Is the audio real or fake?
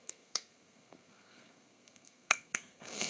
fake